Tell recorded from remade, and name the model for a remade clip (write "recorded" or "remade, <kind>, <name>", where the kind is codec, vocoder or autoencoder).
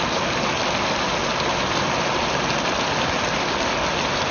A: recorded